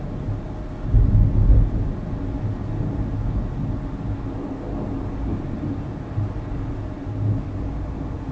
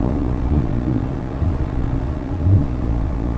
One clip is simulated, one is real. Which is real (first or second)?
first